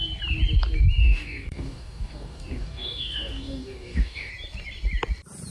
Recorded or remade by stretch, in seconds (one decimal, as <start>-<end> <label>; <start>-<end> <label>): 0.0-1.0 recorded; 1.0-4.3 remade; 4.3-5.5 recorded